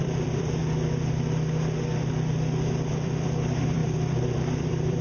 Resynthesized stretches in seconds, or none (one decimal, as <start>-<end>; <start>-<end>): 0.0-0.6; 2.9-5.0